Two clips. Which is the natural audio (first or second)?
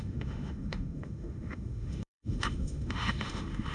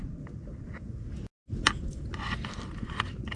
second